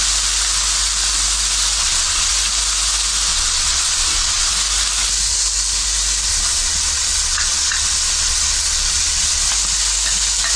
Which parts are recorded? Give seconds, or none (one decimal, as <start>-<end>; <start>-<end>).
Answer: 0.0-1.8; 2.3-3.3; 4.5-6.3; 9.5-10.6